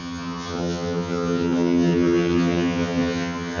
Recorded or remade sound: remade